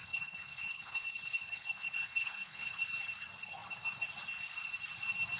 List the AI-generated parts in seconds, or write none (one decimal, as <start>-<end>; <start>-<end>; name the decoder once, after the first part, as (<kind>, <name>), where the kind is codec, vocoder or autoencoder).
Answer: 0.0-2.8 (codec, HILCodec)